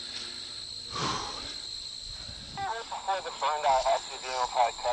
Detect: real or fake real